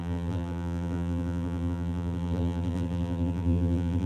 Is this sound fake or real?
fake